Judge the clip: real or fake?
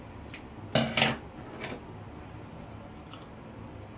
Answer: real